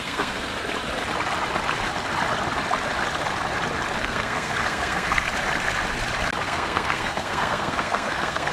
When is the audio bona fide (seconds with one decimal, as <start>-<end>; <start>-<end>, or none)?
0.5-4.0; 5.3-6.4